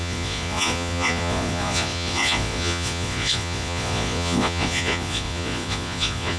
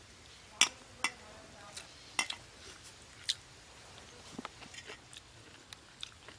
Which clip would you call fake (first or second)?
first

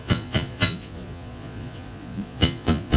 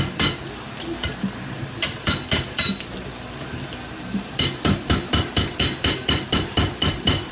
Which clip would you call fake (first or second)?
first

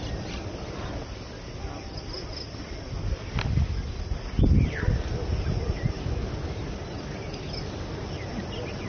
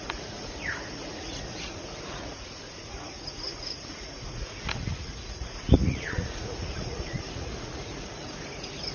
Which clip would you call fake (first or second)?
second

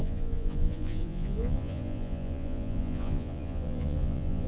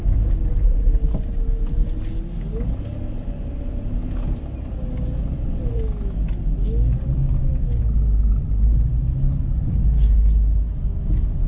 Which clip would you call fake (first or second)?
first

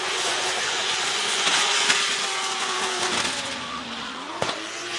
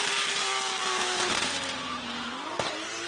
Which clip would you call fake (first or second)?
first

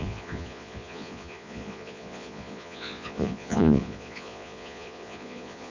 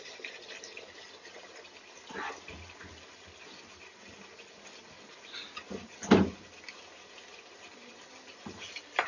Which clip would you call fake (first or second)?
first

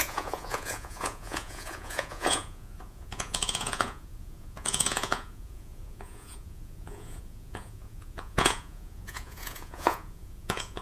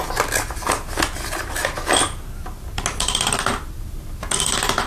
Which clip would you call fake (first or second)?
first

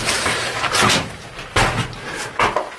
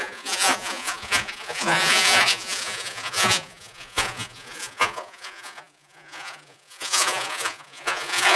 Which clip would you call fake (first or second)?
second